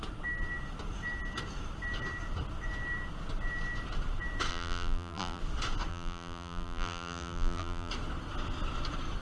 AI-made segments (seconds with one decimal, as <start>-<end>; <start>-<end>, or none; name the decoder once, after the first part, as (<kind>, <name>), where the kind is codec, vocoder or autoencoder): 4.5-5.4 (vocoder, BigVGAN v2); 5.9-7.9